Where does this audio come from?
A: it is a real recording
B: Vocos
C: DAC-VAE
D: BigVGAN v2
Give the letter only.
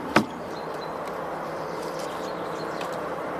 D